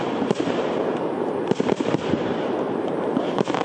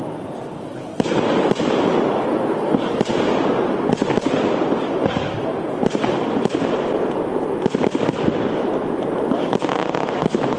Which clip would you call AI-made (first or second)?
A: first